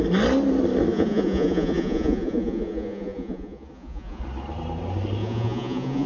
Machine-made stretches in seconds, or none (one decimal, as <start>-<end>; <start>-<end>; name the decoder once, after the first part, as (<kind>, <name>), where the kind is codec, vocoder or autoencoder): 0.9-4.2 (vocoder, Vocos); 5.2-6.1